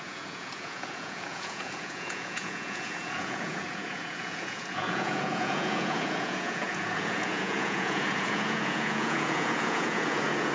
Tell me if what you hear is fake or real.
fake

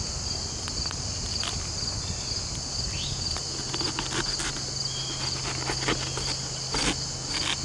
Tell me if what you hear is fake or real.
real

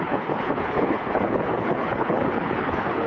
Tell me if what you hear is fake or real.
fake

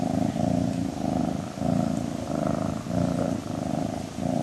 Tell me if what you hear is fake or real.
real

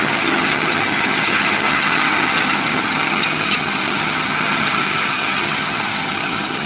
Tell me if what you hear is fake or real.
fake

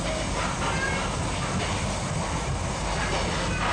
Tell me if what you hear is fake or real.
real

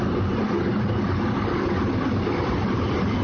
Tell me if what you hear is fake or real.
real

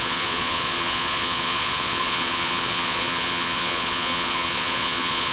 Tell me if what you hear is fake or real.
fake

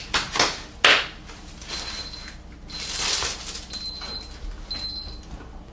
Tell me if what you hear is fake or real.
real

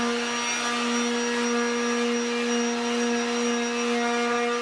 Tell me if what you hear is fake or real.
real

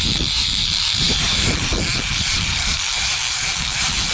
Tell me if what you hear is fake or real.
fake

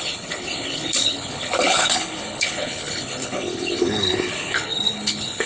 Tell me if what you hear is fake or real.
fake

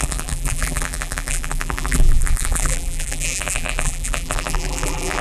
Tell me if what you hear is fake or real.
fake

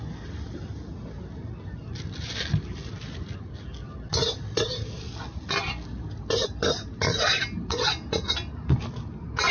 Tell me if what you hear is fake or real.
real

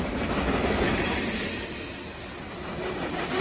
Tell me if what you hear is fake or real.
real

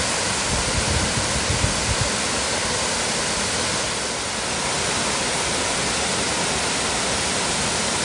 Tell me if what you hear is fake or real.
real